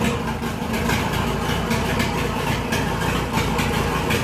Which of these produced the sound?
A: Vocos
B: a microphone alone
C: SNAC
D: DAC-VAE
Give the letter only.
B